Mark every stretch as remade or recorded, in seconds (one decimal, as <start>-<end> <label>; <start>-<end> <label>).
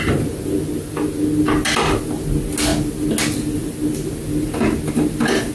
0.0-5.5 recorded